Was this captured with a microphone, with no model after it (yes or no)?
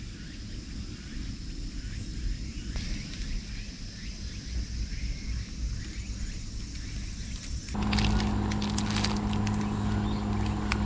yes